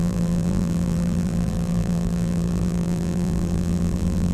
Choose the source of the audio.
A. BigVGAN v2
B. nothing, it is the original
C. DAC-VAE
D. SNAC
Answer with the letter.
A